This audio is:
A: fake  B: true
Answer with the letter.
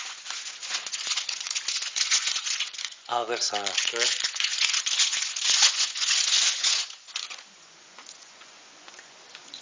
A